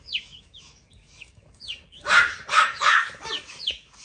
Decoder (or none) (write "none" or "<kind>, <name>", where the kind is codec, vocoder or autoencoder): codec, DAC